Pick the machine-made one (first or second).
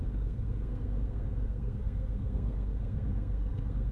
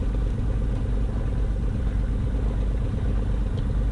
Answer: first